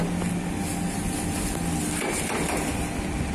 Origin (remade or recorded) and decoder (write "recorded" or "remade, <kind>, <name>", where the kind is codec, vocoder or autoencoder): recorded